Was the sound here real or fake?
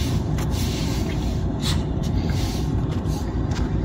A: fake